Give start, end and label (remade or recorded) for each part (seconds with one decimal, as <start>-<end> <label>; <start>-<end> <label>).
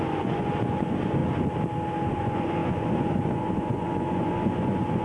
0.0-1.2 remade; 1.2-2.1 recorded; 2.1-5.0 remade